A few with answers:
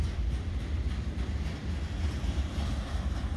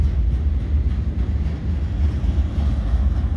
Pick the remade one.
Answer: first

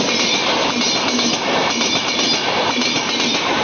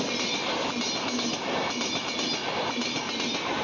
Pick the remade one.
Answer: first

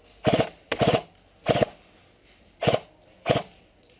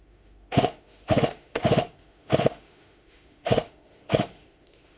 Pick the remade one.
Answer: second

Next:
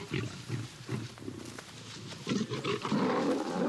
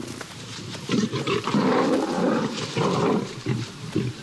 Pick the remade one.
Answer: second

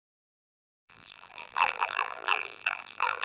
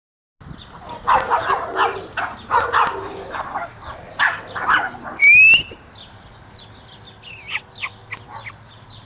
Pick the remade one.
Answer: first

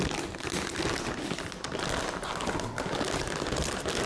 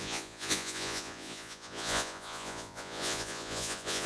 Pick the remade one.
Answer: second